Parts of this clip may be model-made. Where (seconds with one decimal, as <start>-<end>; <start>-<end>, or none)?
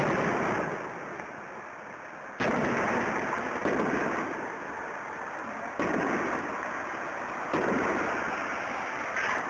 none